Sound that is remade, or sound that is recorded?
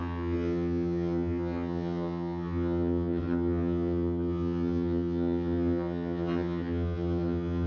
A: remade